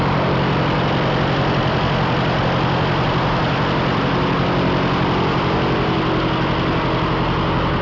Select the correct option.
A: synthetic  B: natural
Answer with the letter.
B